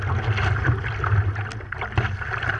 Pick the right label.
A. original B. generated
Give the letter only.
A